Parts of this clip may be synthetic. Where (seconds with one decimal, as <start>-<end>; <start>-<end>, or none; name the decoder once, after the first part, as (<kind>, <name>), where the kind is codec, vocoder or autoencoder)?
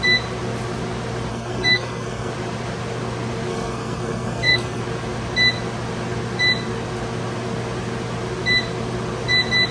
1.3-2.3 (codec, SNAC); 3.5-4.8